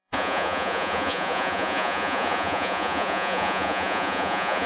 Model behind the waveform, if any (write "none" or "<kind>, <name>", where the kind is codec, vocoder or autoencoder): vocoder, Vocos